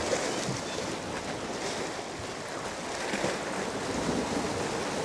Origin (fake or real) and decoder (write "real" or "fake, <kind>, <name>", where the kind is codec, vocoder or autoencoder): real